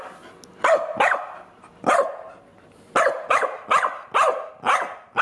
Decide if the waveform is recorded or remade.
recorded